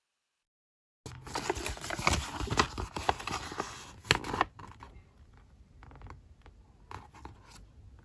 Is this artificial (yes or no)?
no